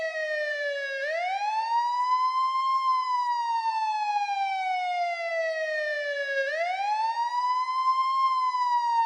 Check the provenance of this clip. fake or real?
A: real